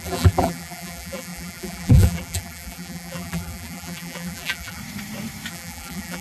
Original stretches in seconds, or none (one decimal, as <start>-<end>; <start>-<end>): 4.8-5.5